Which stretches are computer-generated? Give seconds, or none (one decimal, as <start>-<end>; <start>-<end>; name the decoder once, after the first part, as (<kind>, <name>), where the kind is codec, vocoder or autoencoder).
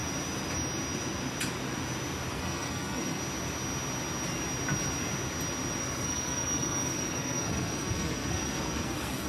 2.3-3.2 (codec, SNAC); 5.8-9.3